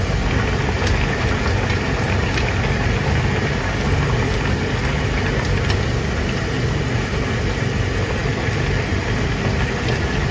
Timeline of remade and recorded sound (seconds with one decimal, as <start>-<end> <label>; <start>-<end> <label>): 0.0-10.3 recorded